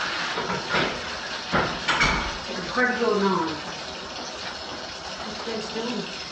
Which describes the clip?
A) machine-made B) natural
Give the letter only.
B